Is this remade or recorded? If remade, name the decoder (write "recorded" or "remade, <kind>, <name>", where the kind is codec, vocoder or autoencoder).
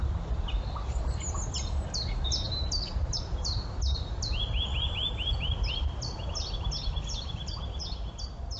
recorded